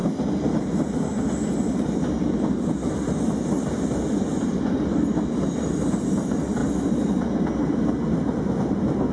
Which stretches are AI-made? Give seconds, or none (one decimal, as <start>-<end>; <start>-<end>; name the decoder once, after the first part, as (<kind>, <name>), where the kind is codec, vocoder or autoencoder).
none